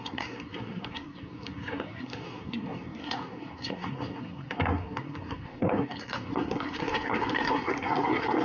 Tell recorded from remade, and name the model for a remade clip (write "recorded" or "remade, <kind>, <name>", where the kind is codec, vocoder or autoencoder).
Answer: remade, codec, SNAC